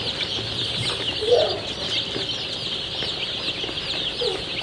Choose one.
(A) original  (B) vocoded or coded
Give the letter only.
A